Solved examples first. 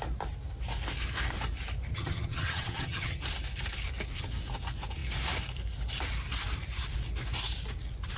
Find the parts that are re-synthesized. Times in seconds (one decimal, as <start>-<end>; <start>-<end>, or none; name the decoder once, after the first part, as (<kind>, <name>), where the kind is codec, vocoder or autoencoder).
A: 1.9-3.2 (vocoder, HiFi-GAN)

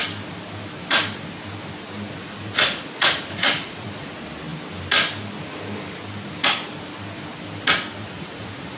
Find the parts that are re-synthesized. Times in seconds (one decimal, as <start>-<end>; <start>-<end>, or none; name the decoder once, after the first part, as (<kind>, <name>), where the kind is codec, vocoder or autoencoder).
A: 2.2-4.1 (vocoder, Vocos); 8.0-8.8

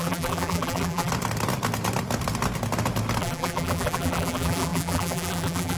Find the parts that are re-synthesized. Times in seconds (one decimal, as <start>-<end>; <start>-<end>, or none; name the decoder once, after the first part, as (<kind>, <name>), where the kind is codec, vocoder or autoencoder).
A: 0.0-1.1 (vocoder, BigVGAN v2); 3.2-5.8

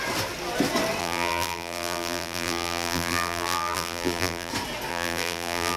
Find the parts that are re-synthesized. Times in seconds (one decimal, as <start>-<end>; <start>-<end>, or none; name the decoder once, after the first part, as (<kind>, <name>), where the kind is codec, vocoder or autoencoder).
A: 1.0-4.5 (vocoder, BigVGAN v2); 4.9-5.8

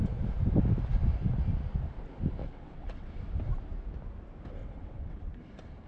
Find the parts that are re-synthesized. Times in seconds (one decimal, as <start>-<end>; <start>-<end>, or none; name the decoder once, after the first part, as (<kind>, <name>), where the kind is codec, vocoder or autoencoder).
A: 2.4-3.1 (vocoder, WaveNeXt); 4.6-5.2

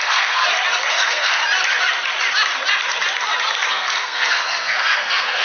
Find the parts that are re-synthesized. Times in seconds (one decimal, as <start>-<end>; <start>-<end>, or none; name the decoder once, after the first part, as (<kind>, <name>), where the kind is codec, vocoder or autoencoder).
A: 0.0-0.4 (codec, SNAC); 0.9-1.4; 3.7-5.4

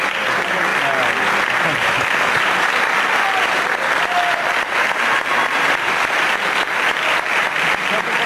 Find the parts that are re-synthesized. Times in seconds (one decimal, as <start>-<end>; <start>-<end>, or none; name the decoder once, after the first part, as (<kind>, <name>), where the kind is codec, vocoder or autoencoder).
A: none